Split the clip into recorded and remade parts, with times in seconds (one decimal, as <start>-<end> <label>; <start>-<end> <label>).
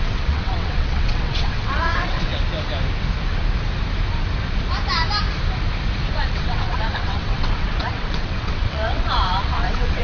0.0-2.3 remade; 2.3-6.1 recorded; 6.1-10.0 remade